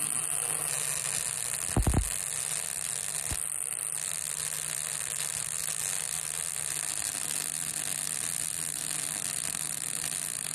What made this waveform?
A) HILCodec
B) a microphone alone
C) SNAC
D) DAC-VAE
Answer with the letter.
B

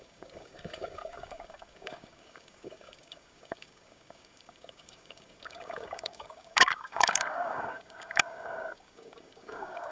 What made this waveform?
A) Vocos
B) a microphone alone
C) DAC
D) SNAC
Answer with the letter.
C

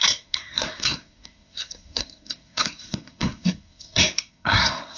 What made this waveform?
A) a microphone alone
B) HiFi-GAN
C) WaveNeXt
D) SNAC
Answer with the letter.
D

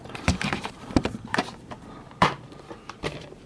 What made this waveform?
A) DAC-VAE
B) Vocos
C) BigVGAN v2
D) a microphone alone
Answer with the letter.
C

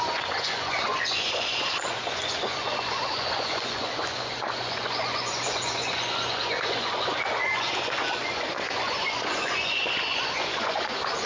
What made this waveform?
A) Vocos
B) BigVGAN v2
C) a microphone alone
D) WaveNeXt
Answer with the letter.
A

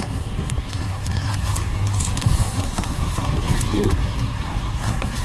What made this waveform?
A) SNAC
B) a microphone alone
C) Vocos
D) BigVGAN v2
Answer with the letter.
A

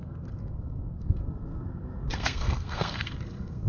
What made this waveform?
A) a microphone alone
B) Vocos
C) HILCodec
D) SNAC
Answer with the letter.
D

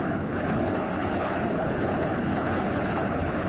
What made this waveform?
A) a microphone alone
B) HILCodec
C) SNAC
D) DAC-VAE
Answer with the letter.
B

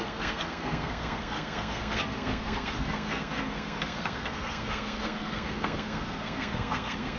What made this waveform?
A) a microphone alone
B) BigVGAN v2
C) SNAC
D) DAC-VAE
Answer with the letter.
C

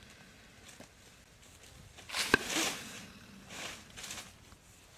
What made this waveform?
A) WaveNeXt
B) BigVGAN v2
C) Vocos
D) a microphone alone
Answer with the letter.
D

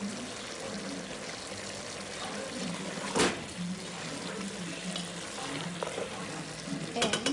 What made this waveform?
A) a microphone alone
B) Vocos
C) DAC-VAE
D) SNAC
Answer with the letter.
A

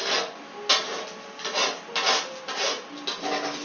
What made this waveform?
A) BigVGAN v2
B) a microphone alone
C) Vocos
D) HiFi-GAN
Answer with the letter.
B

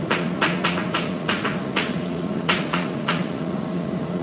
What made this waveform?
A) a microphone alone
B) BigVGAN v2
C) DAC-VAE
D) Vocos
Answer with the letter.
D